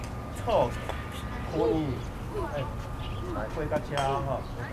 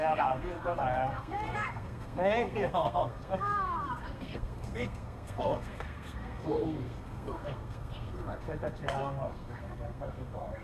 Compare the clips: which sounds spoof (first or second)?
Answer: second